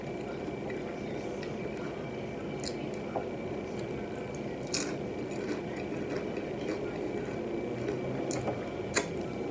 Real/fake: real